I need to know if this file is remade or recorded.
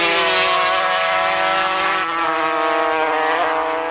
recorded